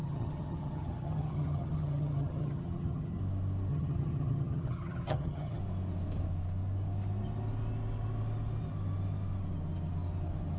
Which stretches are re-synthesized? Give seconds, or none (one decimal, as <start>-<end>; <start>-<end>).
0.0-3.2; 3.7-5.6